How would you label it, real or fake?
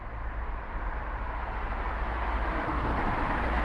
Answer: real